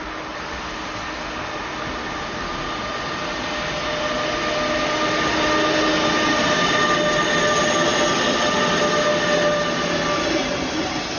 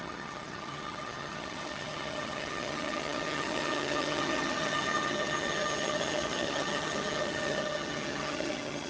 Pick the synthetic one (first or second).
second